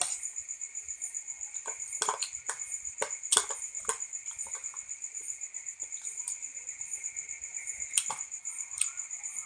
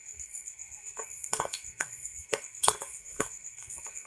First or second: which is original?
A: first